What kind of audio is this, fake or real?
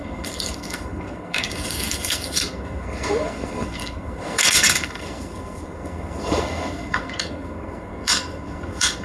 fake